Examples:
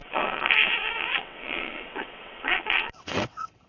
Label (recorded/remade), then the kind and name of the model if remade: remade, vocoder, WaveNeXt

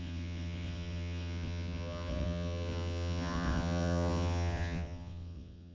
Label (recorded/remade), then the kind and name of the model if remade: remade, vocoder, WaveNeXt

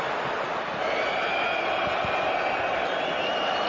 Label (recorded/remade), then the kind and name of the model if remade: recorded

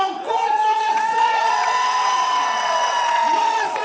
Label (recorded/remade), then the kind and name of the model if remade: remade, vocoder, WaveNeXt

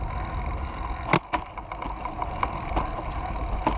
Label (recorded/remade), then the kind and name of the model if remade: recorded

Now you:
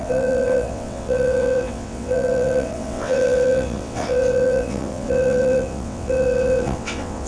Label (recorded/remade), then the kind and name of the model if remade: remade, vocoder, WaveNeXt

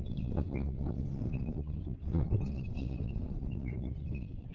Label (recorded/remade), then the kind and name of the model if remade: remade, vocoder, WaveNeXt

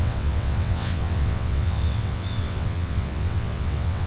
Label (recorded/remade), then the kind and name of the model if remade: remade, vocoder, WaveNeXt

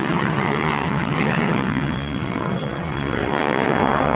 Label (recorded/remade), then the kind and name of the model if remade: remade, vocoder, WaveNeXt